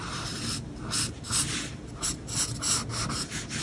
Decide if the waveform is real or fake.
real